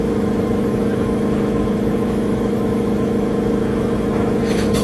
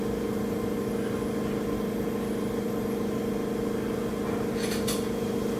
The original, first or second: second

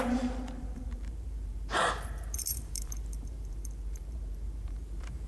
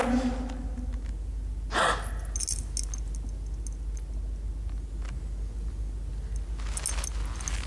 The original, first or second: second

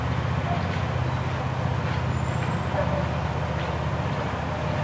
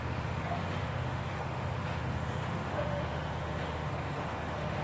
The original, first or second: first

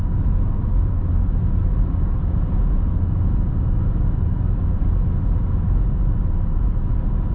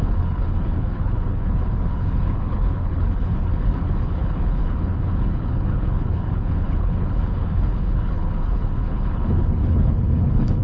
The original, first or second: first